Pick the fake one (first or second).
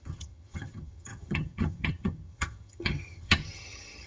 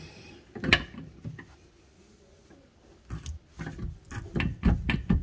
first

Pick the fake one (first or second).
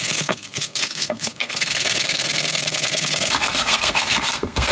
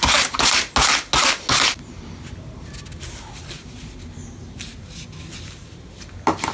first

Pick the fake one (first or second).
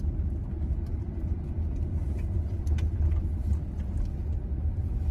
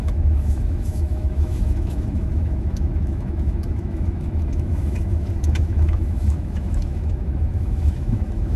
second